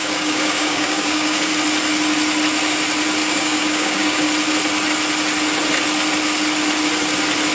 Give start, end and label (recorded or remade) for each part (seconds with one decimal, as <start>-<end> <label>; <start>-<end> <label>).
0.0-1.5 remade; 1.5-3.2 recorded; 3.2-4.3 remade; 4.3-7.5 recorded